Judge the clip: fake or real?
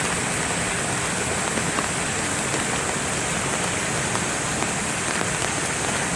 real